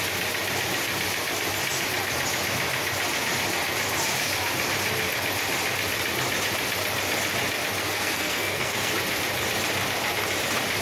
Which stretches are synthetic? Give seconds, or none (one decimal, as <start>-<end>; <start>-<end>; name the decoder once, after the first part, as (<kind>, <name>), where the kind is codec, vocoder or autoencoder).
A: 7.8-8.9 (codec, SNAC)